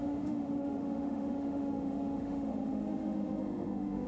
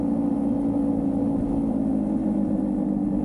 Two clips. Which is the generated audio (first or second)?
first